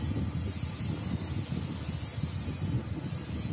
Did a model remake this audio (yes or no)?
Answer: no